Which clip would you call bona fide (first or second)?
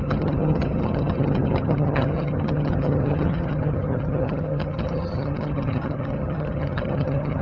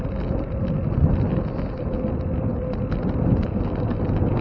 second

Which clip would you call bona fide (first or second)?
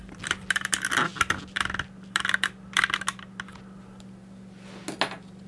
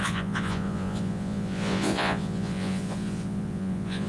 first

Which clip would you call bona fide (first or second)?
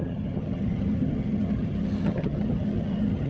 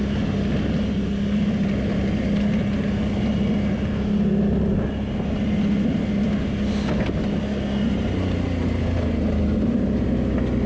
second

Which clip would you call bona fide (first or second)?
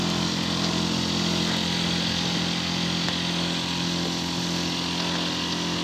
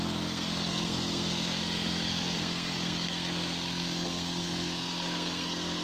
first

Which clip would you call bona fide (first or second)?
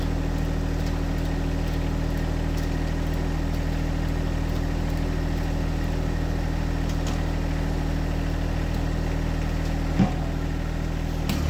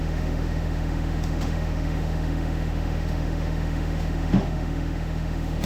first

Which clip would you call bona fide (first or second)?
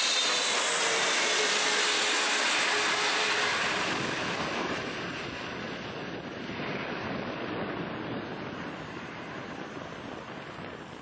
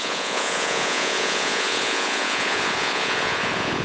first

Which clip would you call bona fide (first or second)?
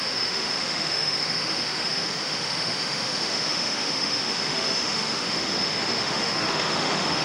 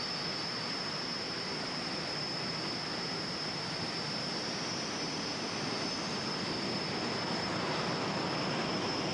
second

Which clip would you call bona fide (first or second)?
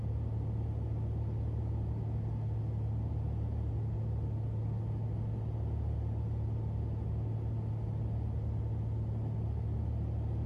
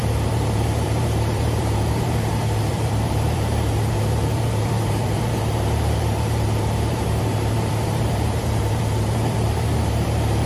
first